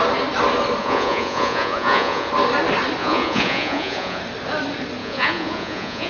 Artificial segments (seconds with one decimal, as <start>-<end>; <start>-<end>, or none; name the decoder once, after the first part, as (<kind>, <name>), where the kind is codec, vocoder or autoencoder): 0.8-2.3 (vocoder, Vocos); 3.0-4.2; 5.0-6.1